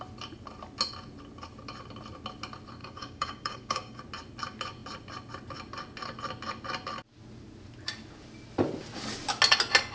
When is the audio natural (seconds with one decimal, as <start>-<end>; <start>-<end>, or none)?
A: 0.0-2.8; 4.0-9.9